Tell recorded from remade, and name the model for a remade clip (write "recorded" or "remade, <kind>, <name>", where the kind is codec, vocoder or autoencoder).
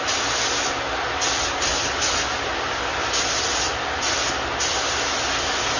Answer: recorded